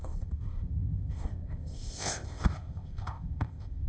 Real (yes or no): no